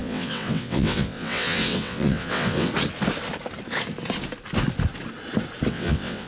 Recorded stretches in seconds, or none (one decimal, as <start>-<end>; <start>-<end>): 2.7-5.7